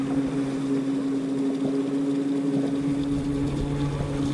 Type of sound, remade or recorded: recorded